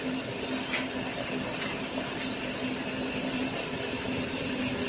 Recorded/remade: recorded